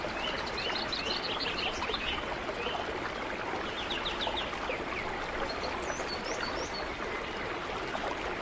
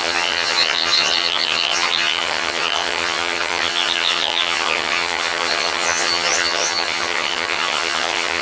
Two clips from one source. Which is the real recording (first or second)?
first